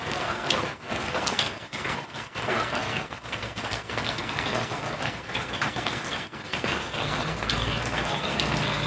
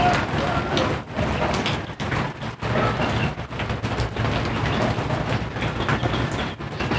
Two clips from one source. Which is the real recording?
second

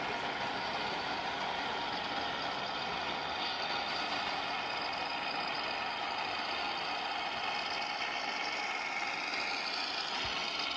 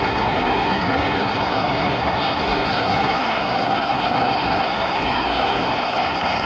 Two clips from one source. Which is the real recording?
first